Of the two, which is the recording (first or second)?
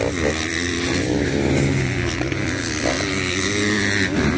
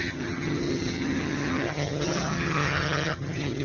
first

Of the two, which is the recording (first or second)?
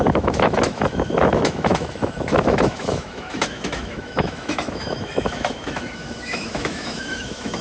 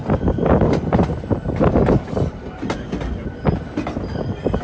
second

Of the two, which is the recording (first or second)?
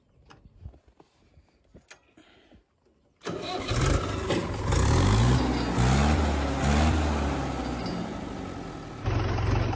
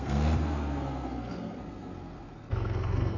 first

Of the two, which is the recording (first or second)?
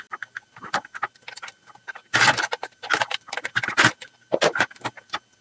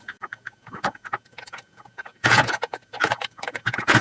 first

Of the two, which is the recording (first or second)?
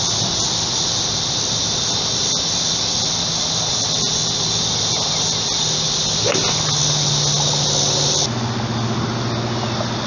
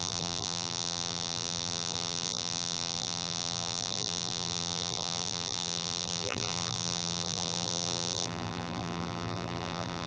first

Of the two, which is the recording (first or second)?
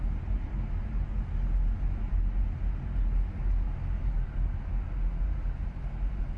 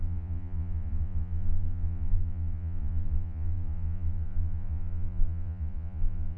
first